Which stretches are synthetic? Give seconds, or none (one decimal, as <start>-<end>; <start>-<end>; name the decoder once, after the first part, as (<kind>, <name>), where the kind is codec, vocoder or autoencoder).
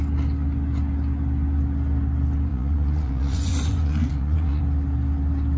2.5-4.6 (vocoder, Vocos)